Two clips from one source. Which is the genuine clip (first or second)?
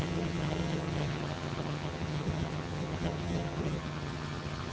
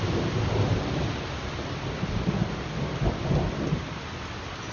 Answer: second